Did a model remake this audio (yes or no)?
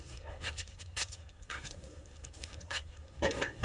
yes